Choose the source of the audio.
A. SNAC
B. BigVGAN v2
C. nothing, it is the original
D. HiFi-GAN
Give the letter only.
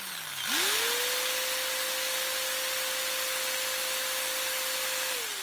C